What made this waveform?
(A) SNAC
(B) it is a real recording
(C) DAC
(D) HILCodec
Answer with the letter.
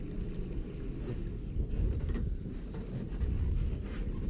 B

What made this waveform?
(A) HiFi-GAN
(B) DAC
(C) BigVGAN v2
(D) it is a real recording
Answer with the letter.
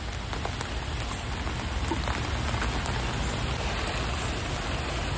D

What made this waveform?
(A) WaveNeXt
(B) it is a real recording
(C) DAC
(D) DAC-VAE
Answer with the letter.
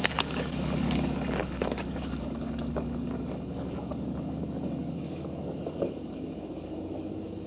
C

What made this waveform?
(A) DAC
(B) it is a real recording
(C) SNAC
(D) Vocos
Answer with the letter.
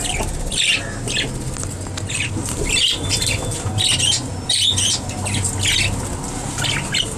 B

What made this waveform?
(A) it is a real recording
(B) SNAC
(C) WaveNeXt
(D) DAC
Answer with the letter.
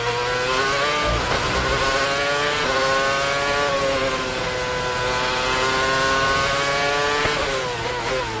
A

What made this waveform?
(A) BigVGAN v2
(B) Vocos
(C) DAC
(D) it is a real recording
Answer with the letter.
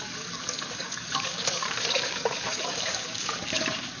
C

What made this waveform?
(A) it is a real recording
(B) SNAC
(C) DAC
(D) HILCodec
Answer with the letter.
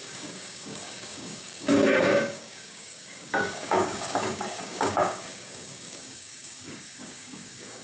C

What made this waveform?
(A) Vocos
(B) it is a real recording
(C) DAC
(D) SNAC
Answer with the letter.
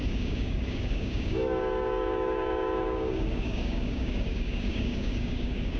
C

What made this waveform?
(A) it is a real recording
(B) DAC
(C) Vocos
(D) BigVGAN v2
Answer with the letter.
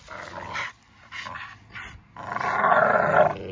A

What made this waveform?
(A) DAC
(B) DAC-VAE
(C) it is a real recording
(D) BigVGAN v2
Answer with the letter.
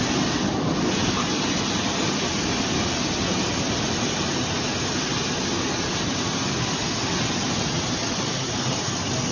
C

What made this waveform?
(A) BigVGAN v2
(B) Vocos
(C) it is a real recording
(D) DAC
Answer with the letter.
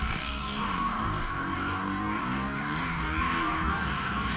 D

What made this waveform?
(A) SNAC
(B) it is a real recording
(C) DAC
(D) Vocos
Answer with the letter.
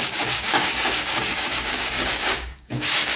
C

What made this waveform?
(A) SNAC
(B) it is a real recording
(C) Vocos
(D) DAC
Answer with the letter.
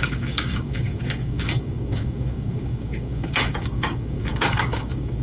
D